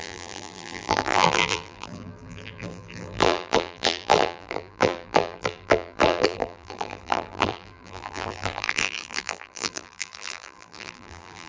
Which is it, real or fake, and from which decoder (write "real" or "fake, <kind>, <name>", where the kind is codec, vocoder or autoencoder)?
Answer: fake, vocoder, BigVGAN v2